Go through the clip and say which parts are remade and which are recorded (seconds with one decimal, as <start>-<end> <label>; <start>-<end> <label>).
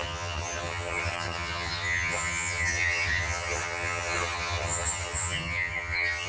0.0-6.3 remade